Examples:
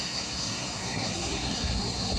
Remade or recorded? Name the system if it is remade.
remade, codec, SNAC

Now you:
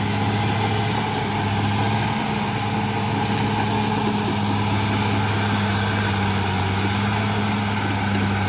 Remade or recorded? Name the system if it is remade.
recorded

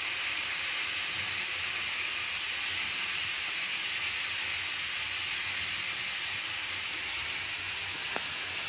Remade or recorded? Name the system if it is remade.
recorded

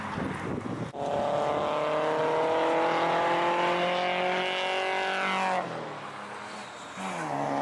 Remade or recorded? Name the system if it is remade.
recorded